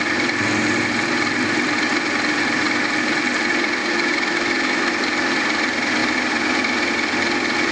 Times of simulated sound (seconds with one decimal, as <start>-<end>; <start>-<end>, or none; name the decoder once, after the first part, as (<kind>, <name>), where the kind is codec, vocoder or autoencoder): 3.8-4.9 (autoencoder, DAC-VAE)